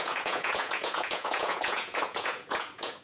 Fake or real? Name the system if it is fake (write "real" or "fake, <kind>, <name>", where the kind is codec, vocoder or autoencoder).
fake, vocoder, Vocos